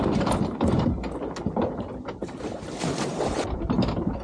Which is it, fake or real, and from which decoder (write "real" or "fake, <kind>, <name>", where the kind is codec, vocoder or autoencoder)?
fake, vocoder, BigVGAN v2